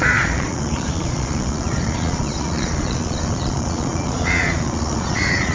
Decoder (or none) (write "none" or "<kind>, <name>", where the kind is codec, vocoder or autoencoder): vocoder, Vocos